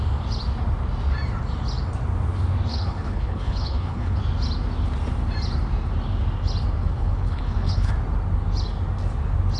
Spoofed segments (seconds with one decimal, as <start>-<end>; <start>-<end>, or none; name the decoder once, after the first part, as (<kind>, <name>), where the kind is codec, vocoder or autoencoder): 2.7-4.2 (codec, HILCodec); 6.8-7.9